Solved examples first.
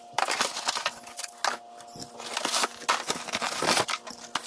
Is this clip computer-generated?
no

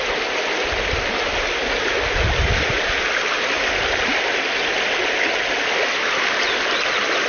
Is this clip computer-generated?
no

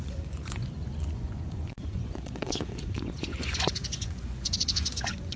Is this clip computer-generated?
yes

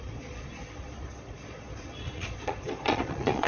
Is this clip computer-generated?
yes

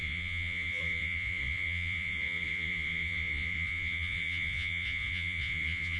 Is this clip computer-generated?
yes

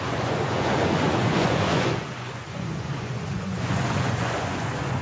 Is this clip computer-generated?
yes